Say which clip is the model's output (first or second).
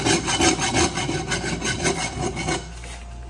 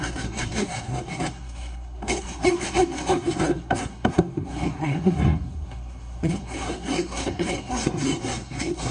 second